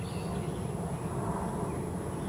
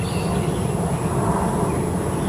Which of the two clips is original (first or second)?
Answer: first